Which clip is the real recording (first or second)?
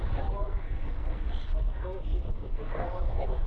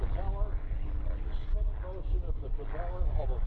second